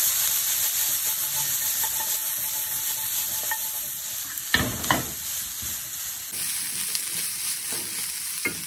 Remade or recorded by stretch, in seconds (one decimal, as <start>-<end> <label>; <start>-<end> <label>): 0.0-8.7 recorded